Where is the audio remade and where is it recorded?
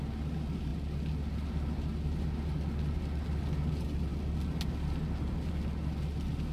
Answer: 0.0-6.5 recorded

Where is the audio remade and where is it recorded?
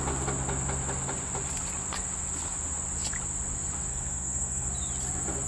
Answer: 0.0-3.9 recorded; 3.9-4.7 remade; 4.7-5.5 recorded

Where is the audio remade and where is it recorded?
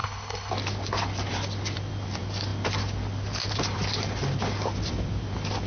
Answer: 0.0-0.5 remade; 0.5-5.7 recorded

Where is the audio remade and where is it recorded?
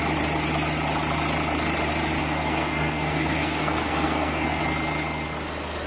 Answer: 0.0-2.2 recorded; 2.2-4.6 remade; 4.6-5.9 recorded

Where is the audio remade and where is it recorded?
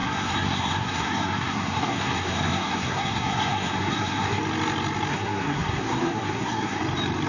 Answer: 0.0-4.4 remade; 4.4-5.1 recorded; 5.1-6.8 remade; 6.8-7.3 recorded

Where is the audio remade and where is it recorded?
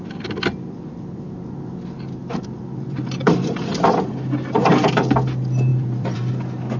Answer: 0.0-0.5 recorded; 0.5-1.3 remade; 1.3-2.2 recorded; 2.2-3.8 remade; 3.8-5.7 recorded; 5.7-6.3 remade; 6.3-6.8 recorded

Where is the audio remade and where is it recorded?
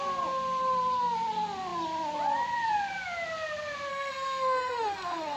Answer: 0.0-3.9 recorded; 3.9-5.4 remade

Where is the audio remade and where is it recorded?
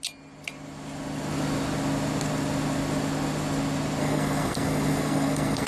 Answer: 0.0-4.0 recorded; 4.0-5.7 remade